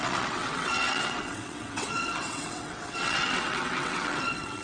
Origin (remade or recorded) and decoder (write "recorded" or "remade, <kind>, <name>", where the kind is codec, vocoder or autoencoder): remade, vocoder, WaveNeXt